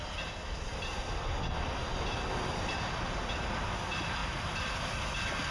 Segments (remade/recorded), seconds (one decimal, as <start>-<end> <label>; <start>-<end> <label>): 0.0-4.2 recorded; 4.2-4.8 remade; 4.8-5.5 recorded